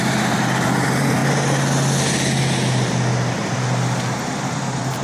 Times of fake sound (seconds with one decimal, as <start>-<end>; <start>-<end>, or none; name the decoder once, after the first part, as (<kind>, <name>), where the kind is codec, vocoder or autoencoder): 0.0-1.2 (vocoder, BigVGAN v2); 4.2-5.0